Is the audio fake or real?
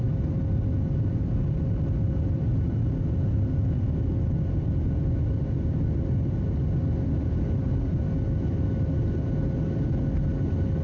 real